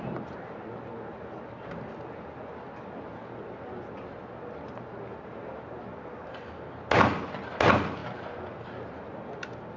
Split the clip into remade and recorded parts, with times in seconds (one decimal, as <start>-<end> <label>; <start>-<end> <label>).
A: 0.0-9.8 recorded